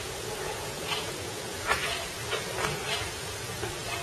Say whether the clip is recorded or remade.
remade